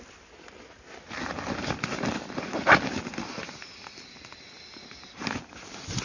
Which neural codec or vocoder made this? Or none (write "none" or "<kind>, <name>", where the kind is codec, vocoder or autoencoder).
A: none